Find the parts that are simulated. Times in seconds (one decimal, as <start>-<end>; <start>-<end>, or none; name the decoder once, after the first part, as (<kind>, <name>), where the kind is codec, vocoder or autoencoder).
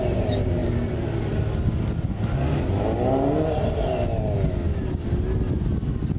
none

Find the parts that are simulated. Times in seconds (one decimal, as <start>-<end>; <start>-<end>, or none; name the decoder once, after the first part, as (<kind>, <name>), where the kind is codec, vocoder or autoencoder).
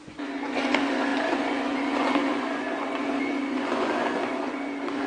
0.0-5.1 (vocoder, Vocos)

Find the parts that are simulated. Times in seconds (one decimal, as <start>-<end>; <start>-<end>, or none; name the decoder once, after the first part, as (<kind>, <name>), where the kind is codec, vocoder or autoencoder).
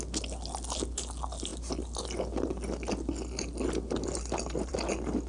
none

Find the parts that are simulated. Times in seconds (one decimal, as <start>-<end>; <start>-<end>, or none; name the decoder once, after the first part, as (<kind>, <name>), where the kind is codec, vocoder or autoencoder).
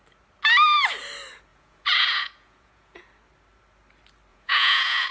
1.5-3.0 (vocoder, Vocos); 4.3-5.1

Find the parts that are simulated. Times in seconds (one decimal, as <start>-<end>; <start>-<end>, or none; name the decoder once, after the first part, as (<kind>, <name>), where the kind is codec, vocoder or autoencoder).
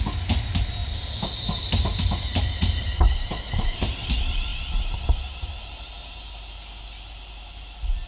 none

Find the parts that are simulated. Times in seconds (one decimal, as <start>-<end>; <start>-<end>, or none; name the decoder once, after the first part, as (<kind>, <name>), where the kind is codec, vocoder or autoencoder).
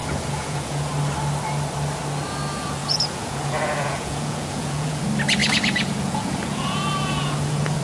0.0-0.9 (vocoder, Vocos); 2.8-5.0; 5.4-7.8